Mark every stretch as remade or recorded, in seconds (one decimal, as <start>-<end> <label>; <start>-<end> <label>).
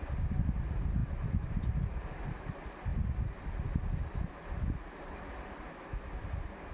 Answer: 0.0-6.7 recorded